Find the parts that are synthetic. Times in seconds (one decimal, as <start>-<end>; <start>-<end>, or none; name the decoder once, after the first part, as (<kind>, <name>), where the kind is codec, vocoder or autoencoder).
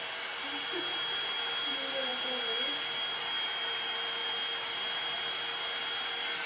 none